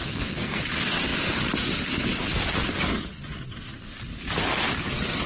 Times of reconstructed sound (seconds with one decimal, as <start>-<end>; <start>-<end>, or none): 0.0-0.6